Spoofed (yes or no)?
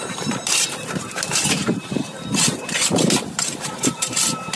yes